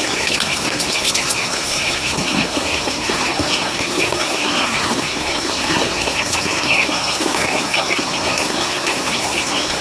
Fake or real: fake